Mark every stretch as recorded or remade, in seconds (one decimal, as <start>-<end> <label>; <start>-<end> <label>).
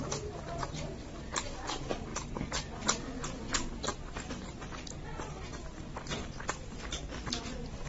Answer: 0.0-7.9 recorded